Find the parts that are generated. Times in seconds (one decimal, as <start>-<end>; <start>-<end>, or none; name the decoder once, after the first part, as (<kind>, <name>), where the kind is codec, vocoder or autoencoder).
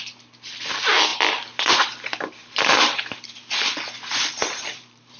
2.4-3.8 (vocoder, BigVGAN v2); 4.4-5.2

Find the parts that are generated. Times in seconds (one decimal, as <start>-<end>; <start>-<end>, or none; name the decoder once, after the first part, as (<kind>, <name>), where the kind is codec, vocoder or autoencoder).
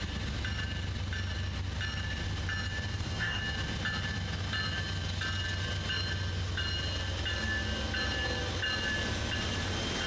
2.9-3.4 (codec, DAC)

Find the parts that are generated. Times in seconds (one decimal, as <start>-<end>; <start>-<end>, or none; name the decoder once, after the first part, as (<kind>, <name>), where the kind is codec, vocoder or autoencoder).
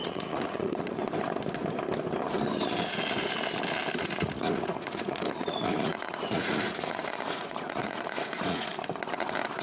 0.0-1.0 (vocoder, Vocos); 4.0-8.7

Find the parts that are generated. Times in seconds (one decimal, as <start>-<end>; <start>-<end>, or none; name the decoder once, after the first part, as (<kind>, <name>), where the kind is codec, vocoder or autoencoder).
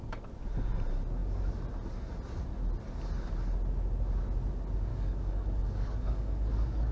4.9-6.9 (codec, DAC)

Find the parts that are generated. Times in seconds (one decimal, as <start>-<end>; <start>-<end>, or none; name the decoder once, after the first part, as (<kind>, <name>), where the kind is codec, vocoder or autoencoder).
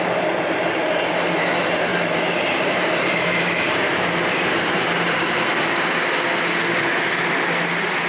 1.9-5.9 (vocoder, BigVGAN v2)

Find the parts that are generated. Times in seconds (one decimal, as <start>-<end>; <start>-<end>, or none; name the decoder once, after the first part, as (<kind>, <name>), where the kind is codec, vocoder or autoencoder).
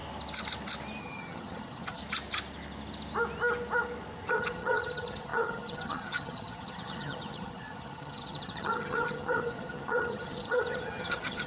1.0-2.0 (vocoder, HiFi-GAN); 4.3-11.5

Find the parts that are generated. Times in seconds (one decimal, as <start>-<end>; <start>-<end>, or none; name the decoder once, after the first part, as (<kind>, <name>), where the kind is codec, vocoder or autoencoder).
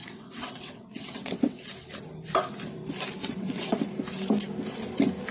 0.0-1.7 (vocoder, WaveNeXt); 3.2-3.8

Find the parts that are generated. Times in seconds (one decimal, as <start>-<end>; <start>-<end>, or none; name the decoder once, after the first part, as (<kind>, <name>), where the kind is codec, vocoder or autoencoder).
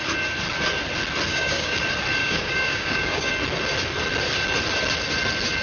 1.3-1.8 (codec, DAC); 2.2-3.3